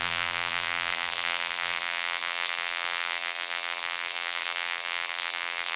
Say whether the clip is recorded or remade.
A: remade